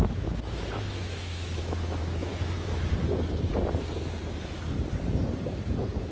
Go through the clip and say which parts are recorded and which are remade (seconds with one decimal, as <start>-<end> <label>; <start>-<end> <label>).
0.0-2.3 remade; 2.3-6.1 recorded